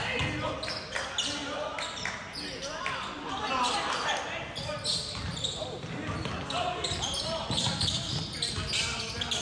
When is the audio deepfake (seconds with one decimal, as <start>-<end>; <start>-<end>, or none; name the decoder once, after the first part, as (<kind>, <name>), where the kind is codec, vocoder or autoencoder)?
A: none